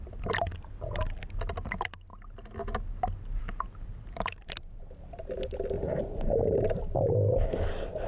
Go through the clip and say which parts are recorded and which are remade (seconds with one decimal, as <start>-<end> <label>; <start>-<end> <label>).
0.0-2.1 remade; 2.1-3.4 recorded; 3.4-8.1 remade